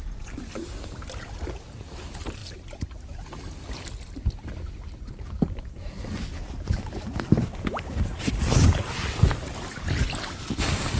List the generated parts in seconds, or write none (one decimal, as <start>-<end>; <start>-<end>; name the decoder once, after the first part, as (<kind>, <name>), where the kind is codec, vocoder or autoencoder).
none